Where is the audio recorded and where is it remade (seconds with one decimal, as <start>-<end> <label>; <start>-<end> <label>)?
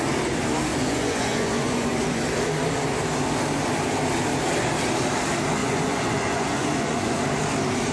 0.0-0.7 recorded; 0.7-2.2 remade; 2.2-5.6 recorded; 5.6-7.2 remade; 7.2-7.9 recorded